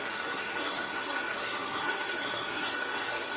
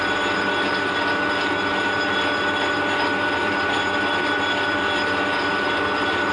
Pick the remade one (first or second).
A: first